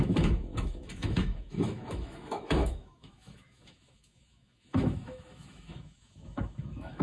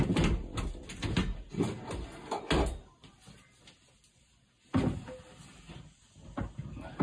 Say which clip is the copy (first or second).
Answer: first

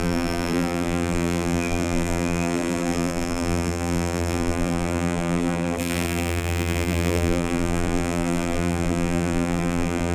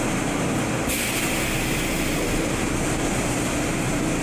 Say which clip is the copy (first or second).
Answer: first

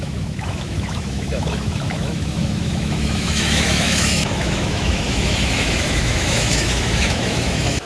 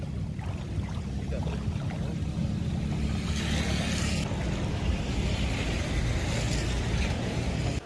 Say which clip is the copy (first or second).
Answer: first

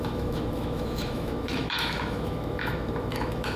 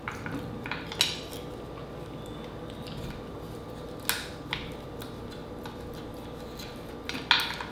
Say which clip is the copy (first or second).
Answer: first